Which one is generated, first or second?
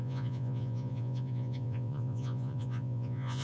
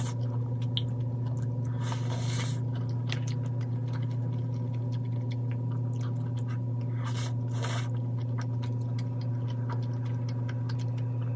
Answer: first